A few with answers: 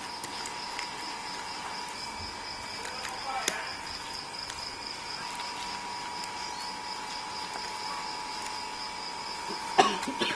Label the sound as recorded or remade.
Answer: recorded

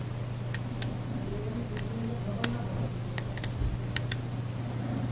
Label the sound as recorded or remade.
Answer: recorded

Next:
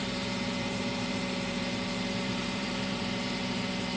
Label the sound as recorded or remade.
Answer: remade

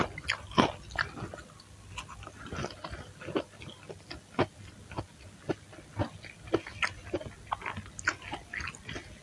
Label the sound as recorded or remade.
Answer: recorded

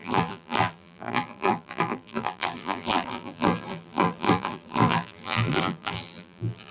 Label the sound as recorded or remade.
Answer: remade